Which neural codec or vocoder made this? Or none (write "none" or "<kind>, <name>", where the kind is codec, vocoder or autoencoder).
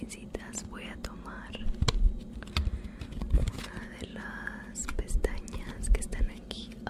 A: none